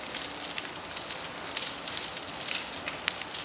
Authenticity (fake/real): real